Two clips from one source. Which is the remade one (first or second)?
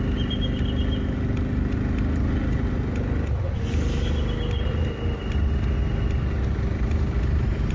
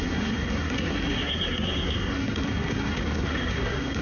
second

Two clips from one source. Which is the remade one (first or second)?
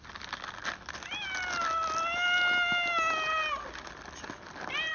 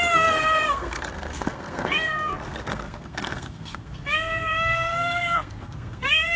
second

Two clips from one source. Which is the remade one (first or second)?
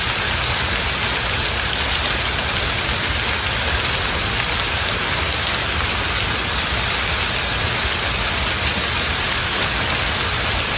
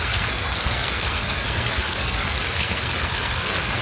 second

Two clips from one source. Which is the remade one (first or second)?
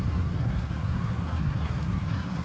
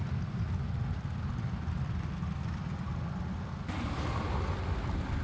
first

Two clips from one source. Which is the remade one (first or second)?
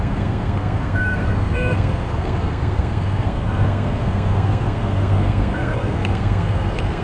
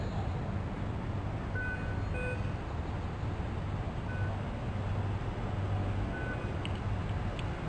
first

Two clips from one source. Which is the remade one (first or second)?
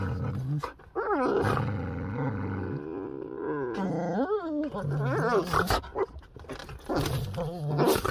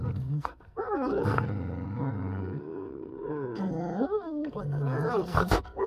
second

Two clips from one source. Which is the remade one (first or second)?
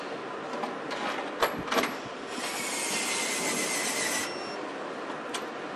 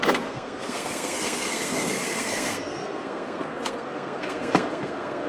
second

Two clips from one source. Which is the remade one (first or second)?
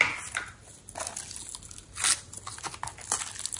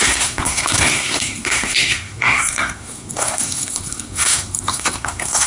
second